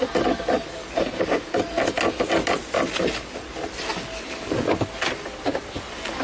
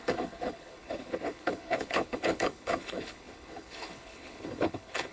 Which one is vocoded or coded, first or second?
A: second